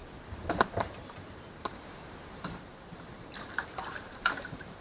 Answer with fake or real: fake